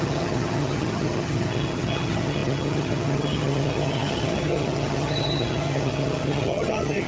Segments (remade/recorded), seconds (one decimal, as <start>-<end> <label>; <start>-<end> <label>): 0.0-7.1 remade